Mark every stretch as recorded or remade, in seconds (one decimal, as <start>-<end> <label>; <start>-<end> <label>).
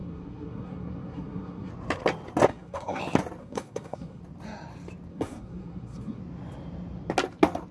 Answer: 0.0-1.7 remade; 1.7-2.5 recorded; 2.5-3.0 remade; 3.0-3.4 recorded; 3.4-4.2 remade; 4.2-5.1 recorded; 5.1-6.2 remade; 6.2-7.7 recorded